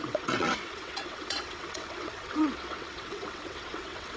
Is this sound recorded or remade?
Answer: remade